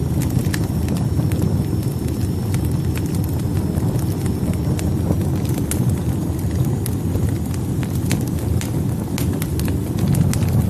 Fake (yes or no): no